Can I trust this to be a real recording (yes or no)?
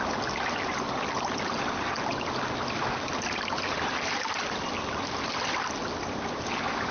yes